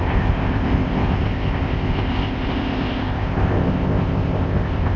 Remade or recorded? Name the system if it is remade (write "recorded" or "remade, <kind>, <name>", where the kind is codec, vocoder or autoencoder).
remade, codec, ZipCodec